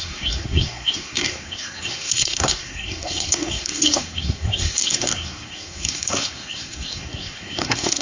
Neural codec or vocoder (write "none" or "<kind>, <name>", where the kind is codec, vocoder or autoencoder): codec, SNAC